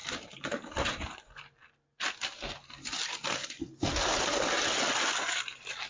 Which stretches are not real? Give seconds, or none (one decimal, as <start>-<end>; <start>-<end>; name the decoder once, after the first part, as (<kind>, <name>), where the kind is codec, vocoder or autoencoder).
0.0-1.2 (vocoder, BigVGAN v2)